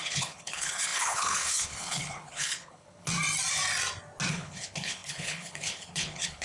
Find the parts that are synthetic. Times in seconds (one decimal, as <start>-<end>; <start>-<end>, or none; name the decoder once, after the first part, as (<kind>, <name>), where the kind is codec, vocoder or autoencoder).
0.0-3.1 (codec, HILCodec); 4.3-6.4